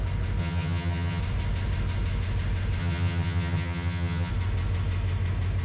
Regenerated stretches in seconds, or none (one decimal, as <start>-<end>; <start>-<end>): 0.4-1.2; 2.8-4.3